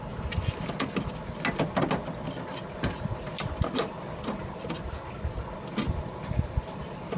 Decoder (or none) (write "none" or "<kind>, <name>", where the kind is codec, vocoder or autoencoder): none